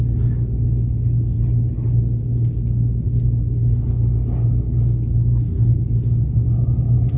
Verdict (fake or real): real